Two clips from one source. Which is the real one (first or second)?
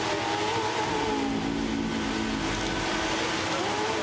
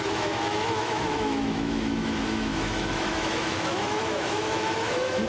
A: first